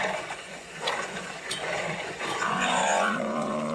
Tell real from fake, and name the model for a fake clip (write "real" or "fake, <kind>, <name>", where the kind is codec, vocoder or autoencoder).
fake, vocoder, Vocos